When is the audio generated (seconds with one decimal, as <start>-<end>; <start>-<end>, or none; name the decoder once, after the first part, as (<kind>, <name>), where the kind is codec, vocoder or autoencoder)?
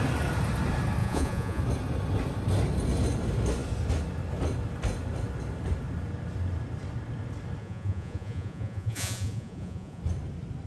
1.0-1.6 (vocoder, Vocos); 7.6-10.0